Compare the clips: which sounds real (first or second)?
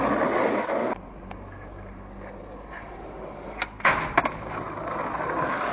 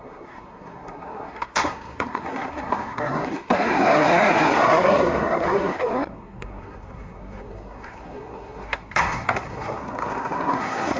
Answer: first